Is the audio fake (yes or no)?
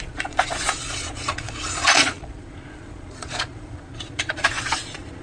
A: yes